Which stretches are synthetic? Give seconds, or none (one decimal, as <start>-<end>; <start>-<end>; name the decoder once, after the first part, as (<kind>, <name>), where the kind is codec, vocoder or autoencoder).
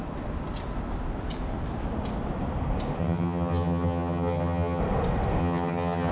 3.0-4.8 (vocoder, HiFi-GAN); 5.4-6.1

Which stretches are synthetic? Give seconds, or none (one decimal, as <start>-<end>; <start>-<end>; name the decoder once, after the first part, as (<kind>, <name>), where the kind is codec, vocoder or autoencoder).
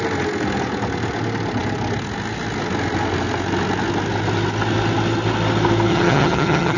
5.9-6.8 (vocoder, HiFi-GAN)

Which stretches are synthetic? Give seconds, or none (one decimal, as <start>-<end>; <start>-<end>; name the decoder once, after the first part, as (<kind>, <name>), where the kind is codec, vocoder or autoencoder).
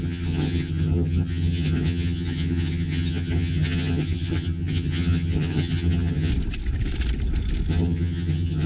0.0-6.3 (vocoder, HiFi-GAN); 7.7-8.7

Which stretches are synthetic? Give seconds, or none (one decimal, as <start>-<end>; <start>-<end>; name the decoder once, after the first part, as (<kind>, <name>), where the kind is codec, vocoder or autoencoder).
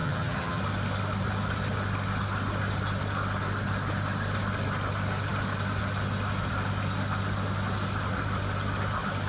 0.0-0.6 (vocoder, HiFi-GAN)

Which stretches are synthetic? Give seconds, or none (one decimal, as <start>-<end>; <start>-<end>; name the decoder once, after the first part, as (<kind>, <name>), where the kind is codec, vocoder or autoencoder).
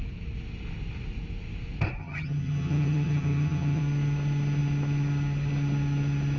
2.0-3.8 (vocoder, HiFi-GAN)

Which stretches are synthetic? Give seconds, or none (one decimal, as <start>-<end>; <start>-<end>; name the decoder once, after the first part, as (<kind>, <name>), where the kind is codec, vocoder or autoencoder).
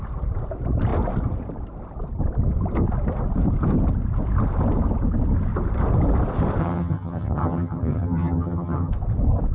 6.6-8.9 (vocoder, HiFi-GAN)